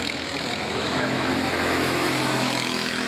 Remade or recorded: remade